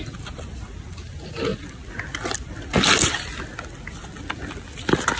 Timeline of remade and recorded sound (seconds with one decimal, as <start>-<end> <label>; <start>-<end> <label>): 0.0-5.2 recorded